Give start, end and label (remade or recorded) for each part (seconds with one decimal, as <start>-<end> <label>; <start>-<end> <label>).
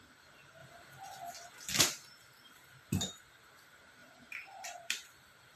0.0-0.6 remade; 0.6-1.8 recorded; 1.8-5.6 remade